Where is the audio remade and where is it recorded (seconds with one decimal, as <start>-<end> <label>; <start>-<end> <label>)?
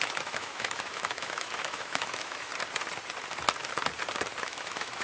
0.0-2.5 remade; 2.5-4.4 recorded; 4.4-5.0 remade